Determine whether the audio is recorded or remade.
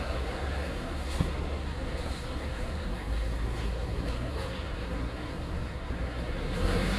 remade